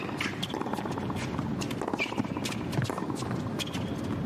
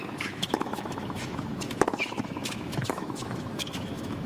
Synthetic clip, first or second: second